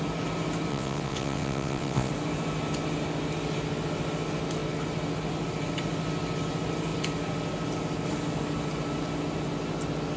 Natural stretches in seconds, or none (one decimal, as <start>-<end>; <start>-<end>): 0.0-0.7; 2.1-10.2